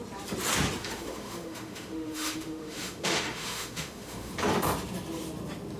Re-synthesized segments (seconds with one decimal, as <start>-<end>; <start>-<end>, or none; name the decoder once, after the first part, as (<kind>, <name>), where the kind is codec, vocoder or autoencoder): 0.8-4.3 (autoencoder, DAC-VAE)